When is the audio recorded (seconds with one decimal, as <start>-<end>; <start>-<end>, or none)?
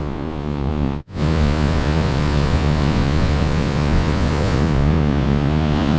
none